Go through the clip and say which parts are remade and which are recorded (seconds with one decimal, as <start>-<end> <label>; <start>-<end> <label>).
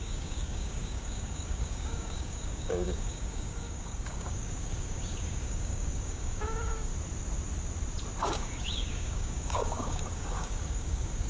0.0-6.9 remade; 6.9-8.2 recorded; 8.2-11.3 remade